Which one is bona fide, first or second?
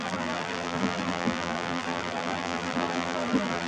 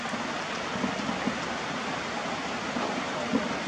second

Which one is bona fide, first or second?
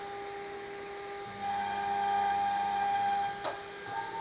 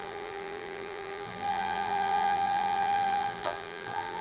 first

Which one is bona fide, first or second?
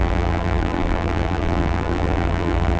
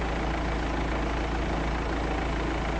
second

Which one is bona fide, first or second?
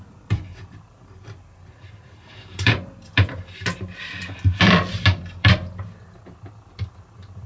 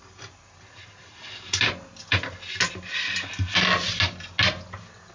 second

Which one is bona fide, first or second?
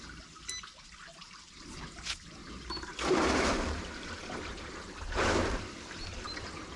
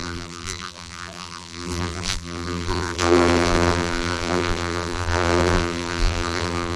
first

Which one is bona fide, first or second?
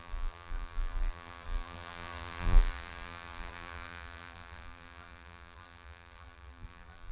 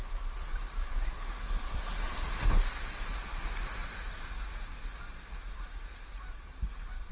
second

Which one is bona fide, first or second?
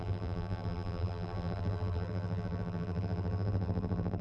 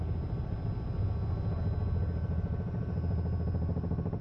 second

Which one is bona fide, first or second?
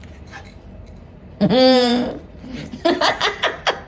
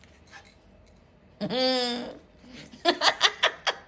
second